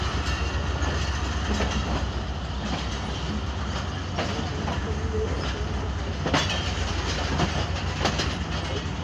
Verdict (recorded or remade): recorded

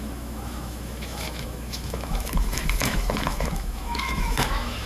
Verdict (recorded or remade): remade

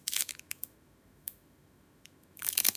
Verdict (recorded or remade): remade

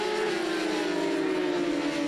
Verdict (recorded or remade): recorded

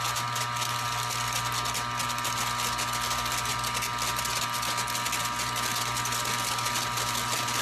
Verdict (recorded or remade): recorded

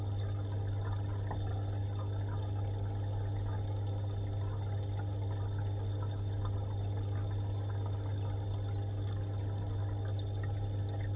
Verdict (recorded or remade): recorded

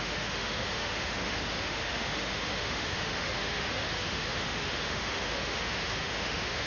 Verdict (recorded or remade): remade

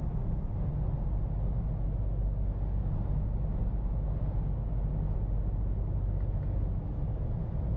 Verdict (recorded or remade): recorded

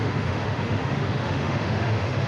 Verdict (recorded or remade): remade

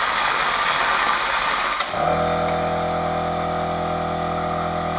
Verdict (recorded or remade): recorded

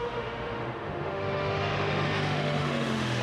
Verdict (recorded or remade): remade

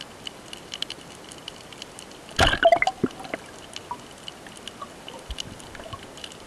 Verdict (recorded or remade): recorded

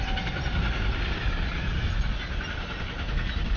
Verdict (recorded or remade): recorded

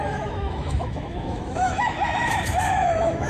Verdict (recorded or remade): remade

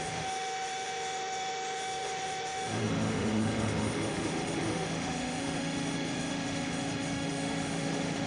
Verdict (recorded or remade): remade